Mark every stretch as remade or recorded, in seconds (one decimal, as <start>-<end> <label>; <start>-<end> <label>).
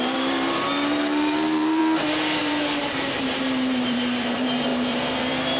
0.0-1.8 remade; 1.8-2.4 recorded; 2.4-5.6 remade